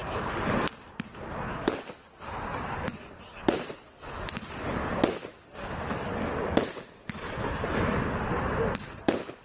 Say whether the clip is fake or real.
real